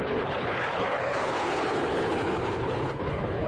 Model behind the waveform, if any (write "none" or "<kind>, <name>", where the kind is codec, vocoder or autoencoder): codec, HILCodec